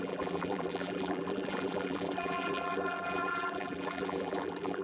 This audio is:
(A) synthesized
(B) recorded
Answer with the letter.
A